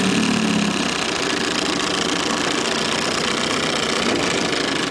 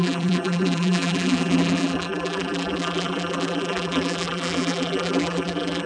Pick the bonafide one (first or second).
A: first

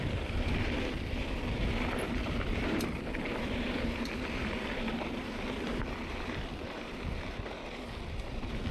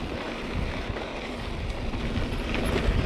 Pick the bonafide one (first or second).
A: second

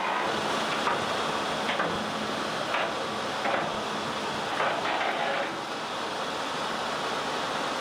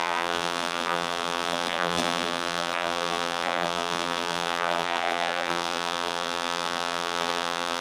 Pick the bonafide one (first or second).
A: first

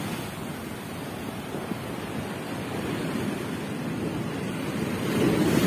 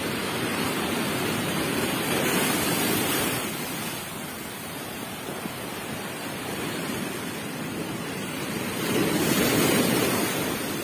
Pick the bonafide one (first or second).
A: first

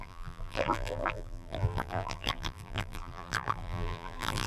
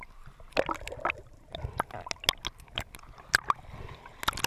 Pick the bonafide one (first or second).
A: second